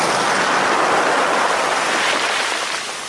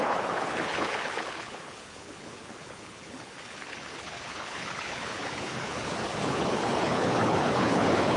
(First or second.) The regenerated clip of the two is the second